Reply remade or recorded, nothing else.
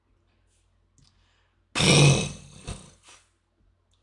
recorded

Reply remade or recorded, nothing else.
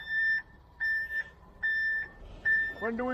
remade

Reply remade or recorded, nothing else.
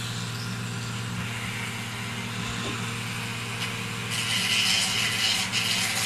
recorded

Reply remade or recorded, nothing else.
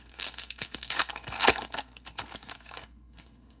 remade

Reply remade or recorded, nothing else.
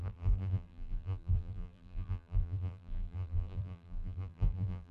remade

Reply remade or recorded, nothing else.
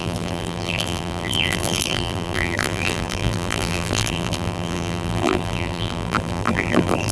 remade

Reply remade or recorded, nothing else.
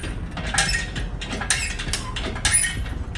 recorded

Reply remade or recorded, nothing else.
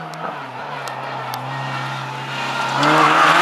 recorded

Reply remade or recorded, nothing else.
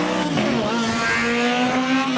recorded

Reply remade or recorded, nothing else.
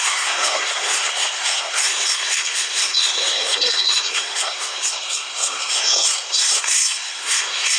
remade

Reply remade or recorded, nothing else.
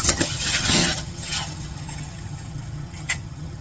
remade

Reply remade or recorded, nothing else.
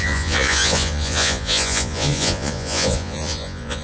remade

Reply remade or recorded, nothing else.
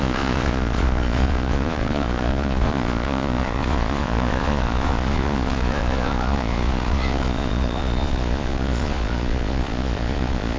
remade